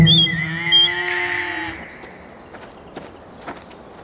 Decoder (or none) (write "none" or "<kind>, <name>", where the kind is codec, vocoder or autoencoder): none